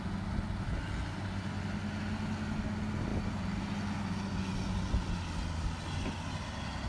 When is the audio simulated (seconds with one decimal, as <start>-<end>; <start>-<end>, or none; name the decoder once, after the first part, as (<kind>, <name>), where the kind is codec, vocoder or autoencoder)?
none